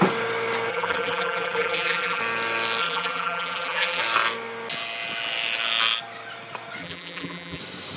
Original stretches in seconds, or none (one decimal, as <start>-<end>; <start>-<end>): 0.0-0.7; 2.2-2.8; 4.0-6.8; 7.6-8.0